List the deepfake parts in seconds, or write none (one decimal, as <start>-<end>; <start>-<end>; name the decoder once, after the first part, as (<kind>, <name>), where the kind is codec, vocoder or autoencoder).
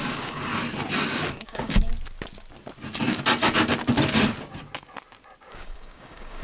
0.0-0.5 (codec, DAC); 1.3-1.9; 5.5-6.4